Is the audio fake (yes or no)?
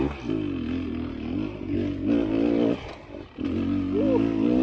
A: no